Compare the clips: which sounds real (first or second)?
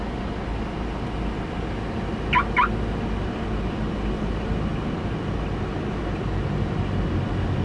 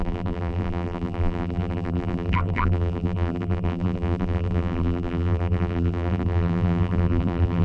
first